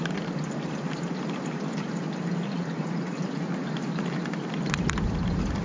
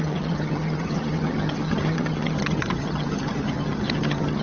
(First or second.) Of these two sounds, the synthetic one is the second